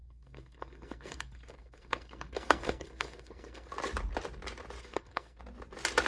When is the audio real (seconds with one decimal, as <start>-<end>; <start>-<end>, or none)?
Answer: 3.7-4.8; 5.4-6.1